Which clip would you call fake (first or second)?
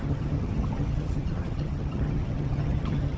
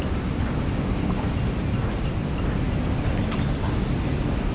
first